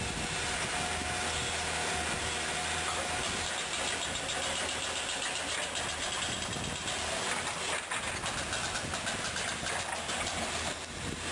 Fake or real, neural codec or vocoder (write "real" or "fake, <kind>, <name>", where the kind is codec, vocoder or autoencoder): real